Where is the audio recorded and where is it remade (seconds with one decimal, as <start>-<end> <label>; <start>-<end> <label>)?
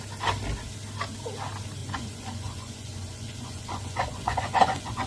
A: 0.0-1.8 recorded; 1.8-5.1 remade